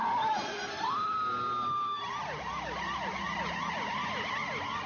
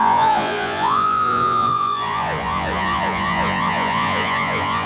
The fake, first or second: second